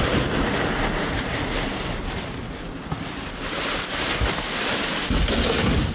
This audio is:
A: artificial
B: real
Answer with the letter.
B